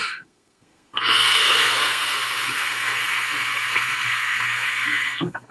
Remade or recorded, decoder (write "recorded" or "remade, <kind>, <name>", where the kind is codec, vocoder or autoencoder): remade, codec, SNAC